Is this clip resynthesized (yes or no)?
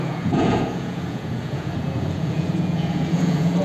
yes